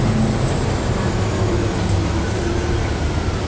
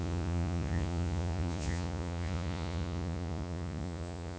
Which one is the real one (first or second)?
first